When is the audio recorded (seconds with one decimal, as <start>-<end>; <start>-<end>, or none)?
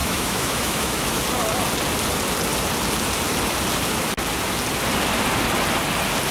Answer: 1.2-6.3